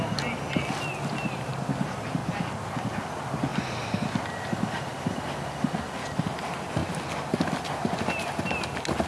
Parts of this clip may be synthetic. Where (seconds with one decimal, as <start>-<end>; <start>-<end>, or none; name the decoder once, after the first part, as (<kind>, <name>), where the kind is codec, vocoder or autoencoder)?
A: none

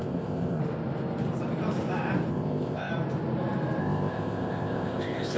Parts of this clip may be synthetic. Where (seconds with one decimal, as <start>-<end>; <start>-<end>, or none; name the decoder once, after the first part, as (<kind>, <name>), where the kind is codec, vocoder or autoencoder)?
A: 0.0-0.6 (codec, ZipCodec); 2.3-2.9; 3.8-5.4

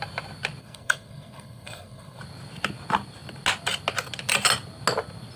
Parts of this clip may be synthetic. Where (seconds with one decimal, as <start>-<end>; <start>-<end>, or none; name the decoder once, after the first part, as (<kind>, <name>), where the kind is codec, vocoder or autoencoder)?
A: 0.6-2.2 (codec, SNAC)

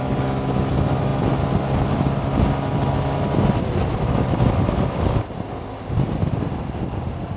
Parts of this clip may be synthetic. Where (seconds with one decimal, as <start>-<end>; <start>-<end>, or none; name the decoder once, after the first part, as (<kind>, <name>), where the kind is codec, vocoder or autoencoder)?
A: none